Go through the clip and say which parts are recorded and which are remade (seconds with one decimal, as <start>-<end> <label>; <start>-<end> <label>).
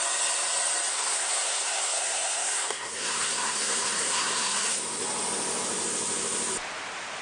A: 0.0-0.9 recorded; 0.9-4.8 remade; 4.8-7.2 recorded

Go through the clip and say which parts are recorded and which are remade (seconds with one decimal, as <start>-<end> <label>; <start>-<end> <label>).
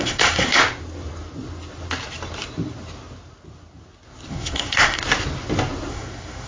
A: 0.0-0.6 remade; 0.6-4.3 recorded; 4.3-5.0 remade; 5.0-5.9 recorded; 5.9-6.5 remade